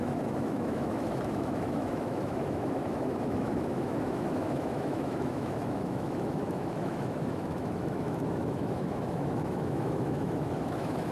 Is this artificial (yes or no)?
yes